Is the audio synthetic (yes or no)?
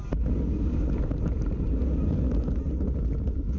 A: no